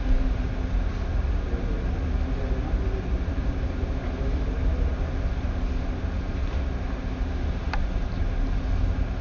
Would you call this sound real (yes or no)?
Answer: yes